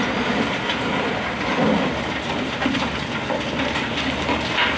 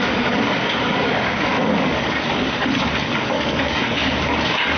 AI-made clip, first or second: second